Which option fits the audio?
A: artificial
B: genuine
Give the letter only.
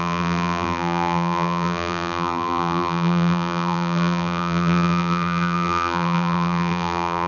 A